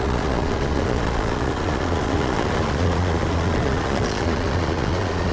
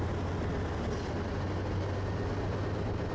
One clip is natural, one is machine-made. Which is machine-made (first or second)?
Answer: first